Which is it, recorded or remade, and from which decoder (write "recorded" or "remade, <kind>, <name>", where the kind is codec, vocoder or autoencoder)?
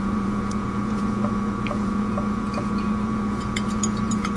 remade, vocoder, Vocos